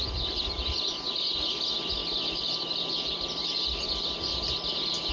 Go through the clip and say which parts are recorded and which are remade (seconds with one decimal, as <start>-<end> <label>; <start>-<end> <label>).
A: 0.0-5.1 recorded